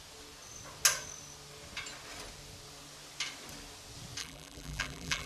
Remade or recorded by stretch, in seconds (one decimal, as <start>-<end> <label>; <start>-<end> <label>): 0.0-4.2 recorded; 4.2-5.3 remade